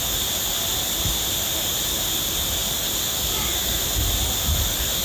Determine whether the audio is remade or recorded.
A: recorded